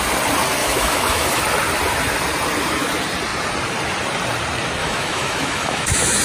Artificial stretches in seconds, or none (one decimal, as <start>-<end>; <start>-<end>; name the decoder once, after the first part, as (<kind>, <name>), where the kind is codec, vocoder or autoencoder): 0.6-1.4 (autoencoder, DAC-VAE); 4.8-6.2